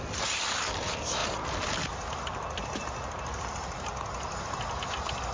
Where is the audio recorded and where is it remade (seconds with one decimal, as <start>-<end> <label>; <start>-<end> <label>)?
0.0-5.3 recorded